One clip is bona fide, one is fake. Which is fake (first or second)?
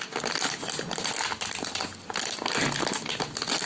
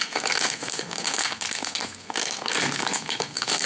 second